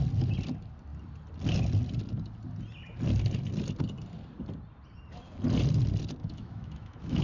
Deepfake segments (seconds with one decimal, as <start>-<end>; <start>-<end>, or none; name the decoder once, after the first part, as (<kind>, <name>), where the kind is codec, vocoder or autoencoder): 6.2-7.2 (autoencoder, DAC-VAE)